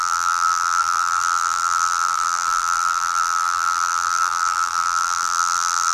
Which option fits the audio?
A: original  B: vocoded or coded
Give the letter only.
B